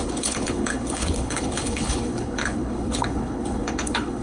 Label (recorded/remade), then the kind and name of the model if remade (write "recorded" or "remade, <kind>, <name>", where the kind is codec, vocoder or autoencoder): remade, codec, HILCodec